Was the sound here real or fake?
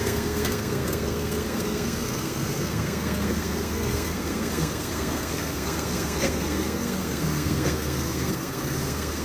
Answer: fake